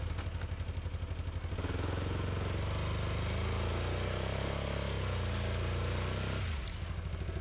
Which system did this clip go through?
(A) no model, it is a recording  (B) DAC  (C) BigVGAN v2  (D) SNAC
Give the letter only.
A